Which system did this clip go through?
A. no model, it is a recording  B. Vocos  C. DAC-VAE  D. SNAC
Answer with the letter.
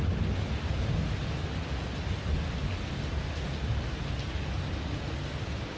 A